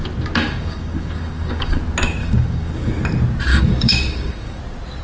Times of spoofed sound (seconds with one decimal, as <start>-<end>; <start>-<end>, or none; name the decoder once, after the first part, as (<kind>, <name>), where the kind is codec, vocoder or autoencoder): 0.4-1.8 (codec, DAC); 2.2-2.9; 3.5-4.6